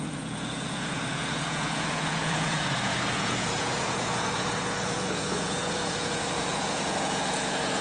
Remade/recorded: remade